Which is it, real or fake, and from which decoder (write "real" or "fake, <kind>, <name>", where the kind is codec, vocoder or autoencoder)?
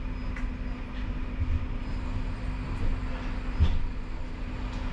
real